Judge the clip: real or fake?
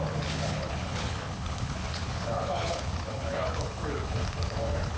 fake